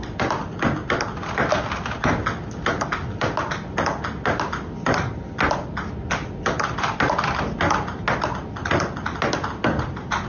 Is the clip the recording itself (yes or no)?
yes